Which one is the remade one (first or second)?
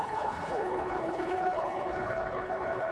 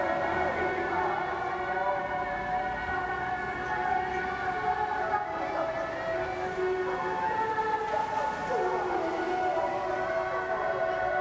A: first